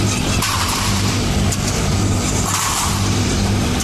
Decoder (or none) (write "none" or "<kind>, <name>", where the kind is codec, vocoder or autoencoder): vocoder, BigVGAN v2